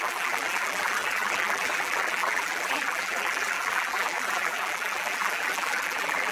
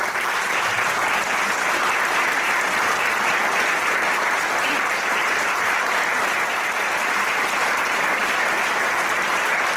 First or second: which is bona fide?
second